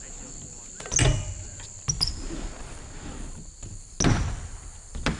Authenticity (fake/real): real